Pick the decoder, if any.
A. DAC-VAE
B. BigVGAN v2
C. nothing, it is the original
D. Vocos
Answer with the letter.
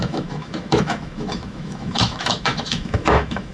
A